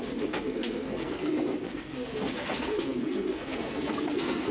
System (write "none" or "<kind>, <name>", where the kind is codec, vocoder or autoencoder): codec, SNAC